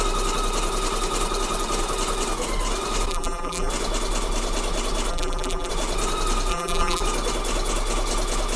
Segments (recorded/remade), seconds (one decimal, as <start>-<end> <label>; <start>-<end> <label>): 0.0-3.1 recorded; 3.1-3.7 remade; 3.7-5.1 recorded; 5.1-5.7 remade; 5.7-6.5 recorded; 6.5-7.0 remade; 7.0-8.6 recorded